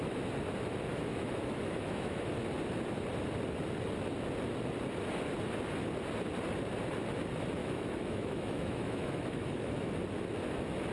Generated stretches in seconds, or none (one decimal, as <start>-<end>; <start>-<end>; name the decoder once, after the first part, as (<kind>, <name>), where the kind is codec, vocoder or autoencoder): 0.9-2.3 (autoencoder, DAC-VAE); 7.6-9.9